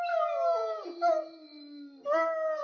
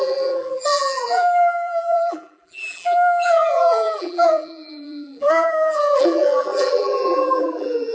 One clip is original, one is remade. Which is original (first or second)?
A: first